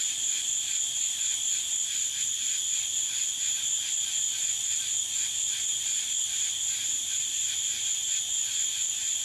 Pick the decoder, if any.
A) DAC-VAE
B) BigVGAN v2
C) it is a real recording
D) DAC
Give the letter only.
C